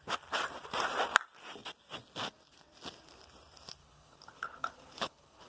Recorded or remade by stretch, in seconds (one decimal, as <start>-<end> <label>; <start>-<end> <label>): 0.0-3.8 recorded; 3.8-5.5 remade